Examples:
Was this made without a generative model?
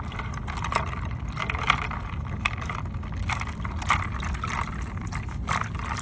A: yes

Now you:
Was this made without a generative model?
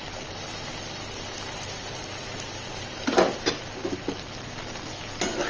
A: yes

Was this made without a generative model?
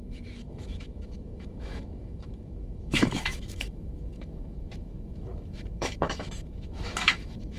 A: no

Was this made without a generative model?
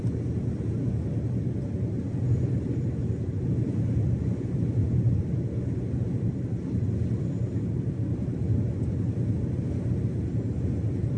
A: yes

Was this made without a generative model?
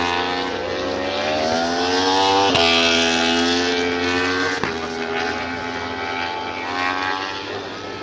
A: yes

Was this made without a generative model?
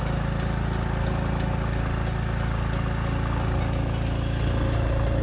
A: yes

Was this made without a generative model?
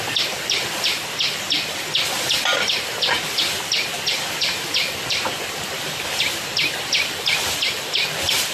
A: yes